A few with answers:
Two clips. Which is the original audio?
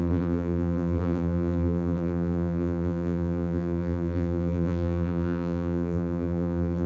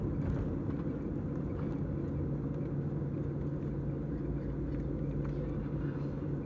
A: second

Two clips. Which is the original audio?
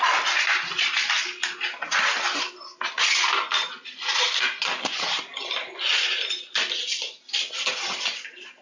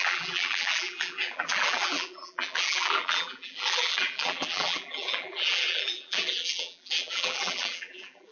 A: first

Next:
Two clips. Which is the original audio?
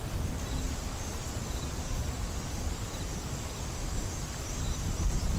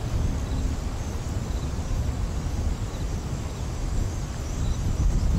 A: second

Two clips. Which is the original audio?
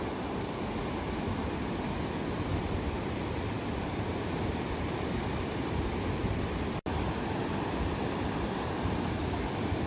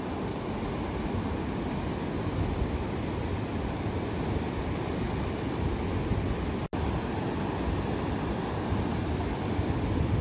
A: second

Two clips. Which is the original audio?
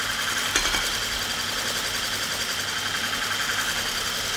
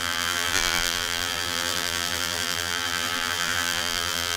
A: first